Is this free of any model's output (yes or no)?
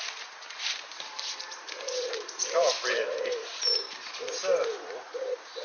no